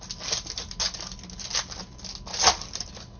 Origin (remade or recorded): recorded